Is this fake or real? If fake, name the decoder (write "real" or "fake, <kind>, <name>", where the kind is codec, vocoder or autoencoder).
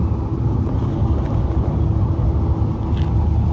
real